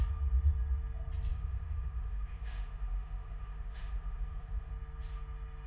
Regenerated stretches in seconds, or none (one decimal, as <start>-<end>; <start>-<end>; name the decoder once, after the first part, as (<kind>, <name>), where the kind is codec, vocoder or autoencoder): 1.3-4.7 (autoencoder, DAC-VAE)

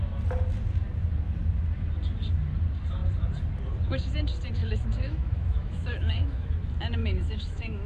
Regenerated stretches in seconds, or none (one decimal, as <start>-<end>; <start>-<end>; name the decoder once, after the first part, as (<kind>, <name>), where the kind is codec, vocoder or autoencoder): 4.6-6.5 (autoencoder, DAC-VAE); 7.0-7.9

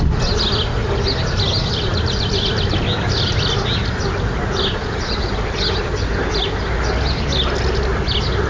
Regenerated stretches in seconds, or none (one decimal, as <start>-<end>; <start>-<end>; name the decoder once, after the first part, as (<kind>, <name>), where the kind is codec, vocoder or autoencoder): none

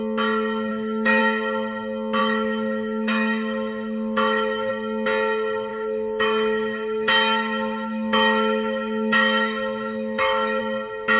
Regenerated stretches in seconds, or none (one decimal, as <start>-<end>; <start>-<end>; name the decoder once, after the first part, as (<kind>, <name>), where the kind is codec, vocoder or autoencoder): 0.7-1.2 (autoencoder, DAC-VAE); 2.2-4.7; 5.7-10.6

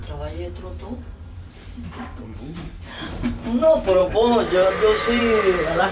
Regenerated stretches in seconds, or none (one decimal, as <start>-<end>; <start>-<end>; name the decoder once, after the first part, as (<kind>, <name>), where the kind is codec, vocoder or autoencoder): none

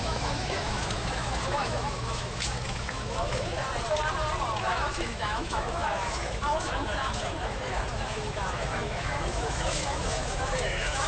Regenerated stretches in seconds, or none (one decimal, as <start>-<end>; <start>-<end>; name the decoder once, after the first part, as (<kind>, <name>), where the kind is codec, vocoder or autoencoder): 0.0-3.6 (autoencoder, DAC-VAE); 4.6-11.1

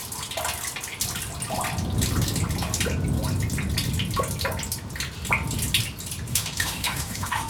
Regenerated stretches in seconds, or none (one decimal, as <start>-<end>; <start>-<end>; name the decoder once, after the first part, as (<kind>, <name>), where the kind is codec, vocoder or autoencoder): 6.3-7.5 (autoencoder, DAC-VAE)